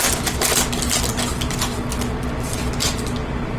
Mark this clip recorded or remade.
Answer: recorded